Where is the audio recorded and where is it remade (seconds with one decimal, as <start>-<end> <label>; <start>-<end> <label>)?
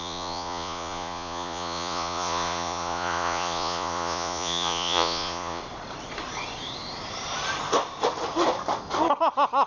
0.0-5.6 remade; 5.6-9.7 recorded